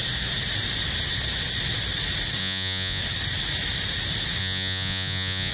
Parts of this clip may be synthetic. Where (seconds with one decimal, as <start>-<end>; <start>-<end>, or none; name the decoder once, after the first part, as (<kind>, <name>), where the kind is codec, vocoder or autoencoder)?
2.4-3.0 (vocoder, Vocos); 4.4-5.5

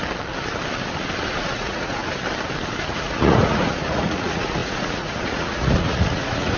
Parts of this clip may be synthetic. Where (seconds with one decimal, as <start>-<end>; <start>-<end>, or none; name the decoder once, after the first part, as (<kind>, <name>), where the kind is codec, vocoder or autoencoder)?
1.3-2.0 (vocoder, Vocos); 2.9-6.6

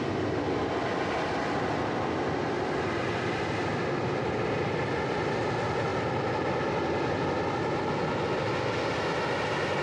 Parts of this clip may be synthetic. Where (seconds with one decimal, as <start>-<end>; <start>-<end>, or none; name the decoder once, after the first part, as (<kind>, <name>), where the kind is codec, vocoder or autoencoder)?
none

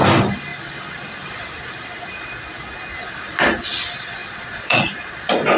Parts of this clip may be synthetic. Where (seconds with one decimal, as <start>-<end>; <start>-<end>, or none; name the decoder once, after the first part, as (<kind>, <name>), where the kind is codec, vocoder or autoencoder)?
4.2-4.8 (vocoder, Vocos)

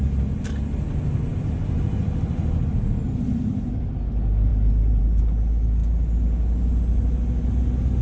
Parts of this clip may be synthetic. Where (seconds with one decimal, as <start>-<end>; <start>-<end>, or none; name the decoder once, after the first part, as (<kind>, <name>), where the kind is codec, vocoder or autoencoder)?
none